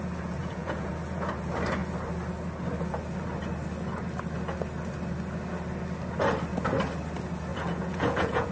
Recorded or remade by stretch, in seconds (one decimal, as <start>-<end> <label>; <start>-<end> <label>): 0.0-0.4 recorded; 0.4-0.9 remade; 0.9-7.5 recorded; 7.5-8.5 remade